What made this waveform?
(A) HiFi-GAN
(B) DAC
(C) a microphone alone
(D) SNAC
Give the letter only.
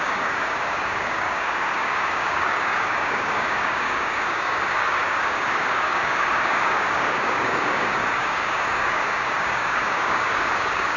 B